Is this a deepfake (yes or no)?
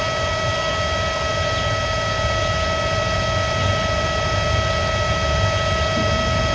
no